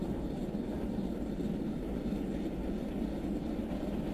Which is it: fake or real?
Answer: real